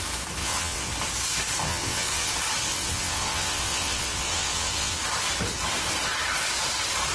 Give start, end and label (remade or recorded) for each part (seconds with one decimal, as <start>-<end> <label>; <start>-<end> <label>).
0.0-0.4 recorded; 0.4-0.9 remade; 0.9-1.6 recorded; 1.6-2.3 remade; 2.3-2.7 recorded; 2.7-5.0 remade; 5.0-7.1 recorded